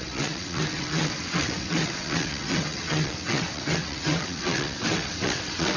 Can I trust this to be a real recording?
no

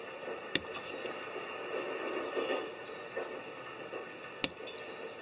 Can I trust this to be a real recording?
yes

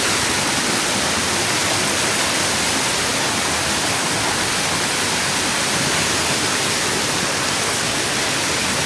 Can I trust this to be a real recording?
yes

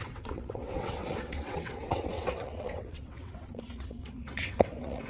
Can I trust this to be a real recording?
no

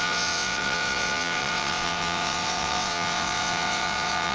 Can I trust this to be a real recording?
no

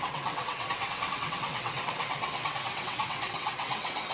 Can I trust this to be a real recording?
no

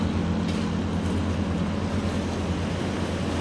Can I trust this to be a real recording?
yes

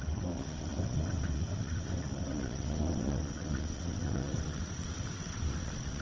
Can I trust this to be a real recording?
no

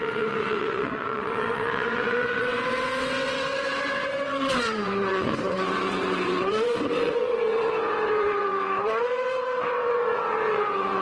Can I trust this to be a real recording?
no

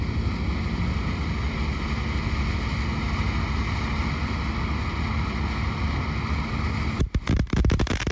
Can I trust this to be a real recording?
yes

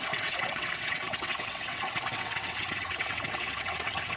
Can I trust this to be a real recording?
no